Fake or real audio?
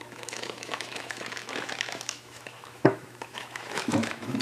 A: fake